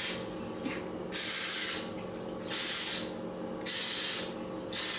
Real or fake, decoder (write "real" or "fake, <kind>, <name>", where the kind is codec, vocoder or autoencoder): real